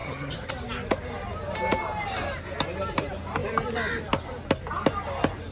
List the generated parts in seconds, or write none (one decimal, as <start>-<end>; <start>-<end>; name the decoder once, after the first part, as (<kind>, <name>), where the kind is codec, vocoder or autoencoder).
0.0-0.5 (vocoder, HiFi-GAN)